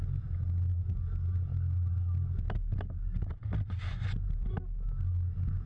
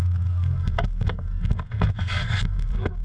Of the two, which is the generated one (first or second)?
second